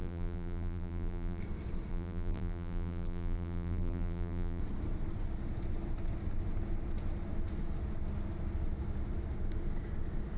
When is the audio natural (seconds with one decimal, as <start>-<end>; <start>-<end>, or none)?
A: 1.4-1.9; 4.6-10.4